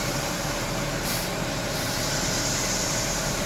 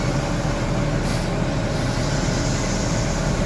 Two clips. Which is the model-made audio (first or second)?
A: first